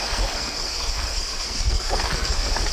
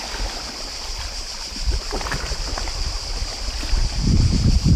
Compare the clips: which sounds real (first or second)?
second